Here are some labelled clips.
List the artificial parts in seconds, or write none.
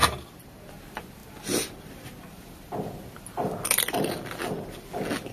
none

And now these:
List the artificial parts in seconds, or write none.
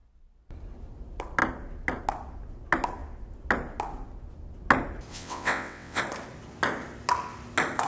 5.1-6.0 (vocoder, WaveNeXt)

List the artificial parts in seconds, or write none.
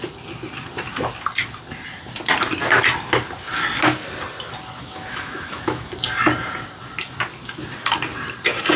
4.8-5.9 (autoencoder, DAC-VAE)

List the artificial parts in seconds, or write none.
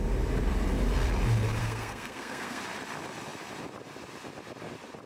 1.6-2.6 (codec, SNAC)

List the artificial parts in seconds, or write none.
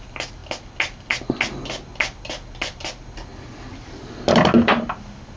none